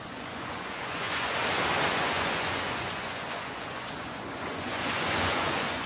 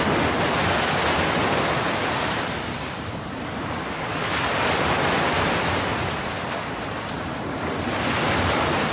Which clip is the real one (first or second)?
second